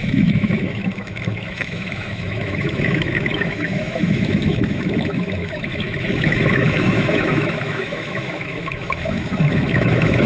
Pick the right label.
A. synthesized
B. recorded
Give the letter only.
A